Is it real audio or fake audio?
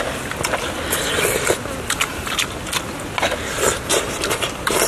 real